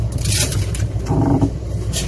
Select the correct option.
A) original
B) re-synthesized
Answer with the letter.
B